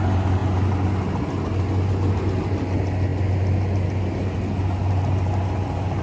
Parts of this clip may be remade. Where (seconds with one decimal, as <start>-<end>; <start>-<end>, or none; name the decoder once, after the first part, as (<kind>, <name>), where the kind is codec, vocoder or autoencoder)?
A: none